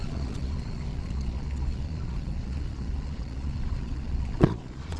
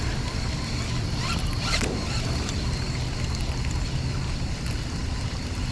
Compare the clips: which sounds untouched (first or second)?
second